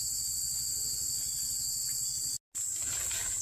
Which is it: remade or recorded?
recorded